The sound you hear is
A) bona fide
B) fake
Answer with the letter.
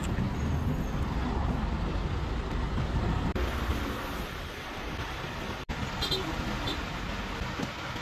A